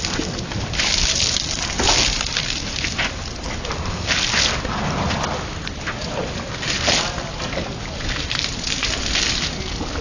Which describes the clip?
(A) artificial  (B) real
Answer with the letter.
B